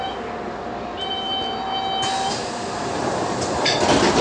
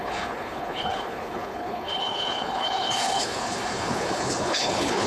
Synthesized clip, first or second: second